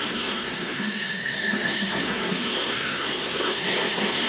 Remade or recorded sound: remade